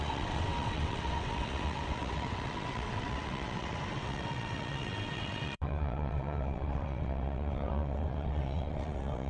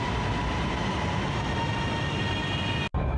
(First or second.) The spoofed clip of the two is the first